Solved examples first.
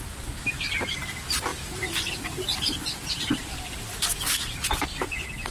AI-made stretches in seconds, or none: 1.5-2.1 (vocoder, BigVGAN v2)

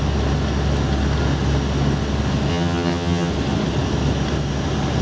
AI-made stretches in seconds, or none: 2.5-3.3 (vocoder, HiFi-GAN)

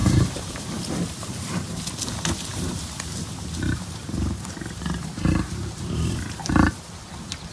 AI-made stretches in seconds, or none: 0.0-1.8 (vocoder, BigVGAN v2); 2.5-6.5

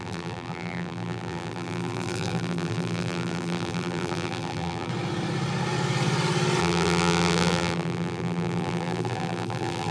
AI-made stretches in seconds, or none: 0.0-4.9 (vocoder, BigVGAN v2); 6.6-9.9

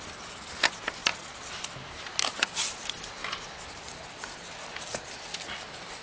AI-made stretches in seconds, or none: none

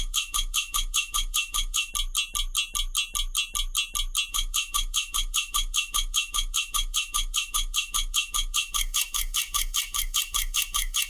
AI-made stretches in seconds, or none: 0.0-1.9 (autoencoder, DAC-VAE); 4.3-11.1